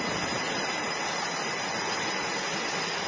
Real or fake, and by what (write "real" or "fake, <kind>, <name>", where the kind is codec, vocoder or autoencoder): real